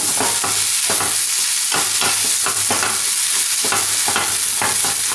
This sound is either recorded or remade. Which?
recorded